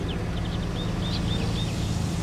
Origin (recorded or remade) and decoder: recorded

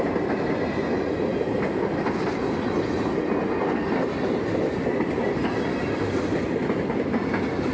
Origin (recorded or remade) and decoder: recorded